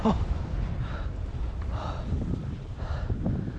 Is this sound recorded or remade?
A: remade